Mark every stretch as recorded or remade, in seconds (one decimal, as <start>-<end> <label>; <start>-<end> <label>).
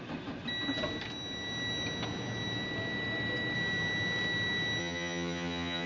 0.0-4.8 recorded; 4.8-5.9 remade